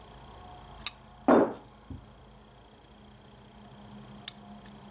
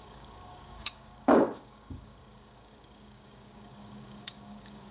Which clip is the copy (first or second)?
second